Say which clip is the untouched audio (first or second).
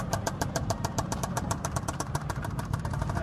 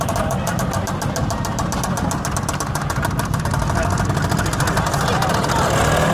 second